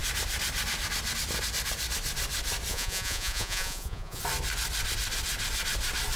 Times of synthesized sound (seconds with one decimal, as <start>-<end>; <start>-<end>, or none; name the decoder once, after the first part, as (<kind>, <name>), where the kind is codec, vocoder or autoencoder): 2.7-4.2 (vocoder, Vocos)